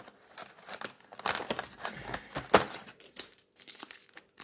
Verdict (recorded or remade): recorded